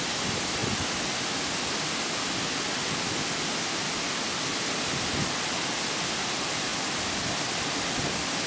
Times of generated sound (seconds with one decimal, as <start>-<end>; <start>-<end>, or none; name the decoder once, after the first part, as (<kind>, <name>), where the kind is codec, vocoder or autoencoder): none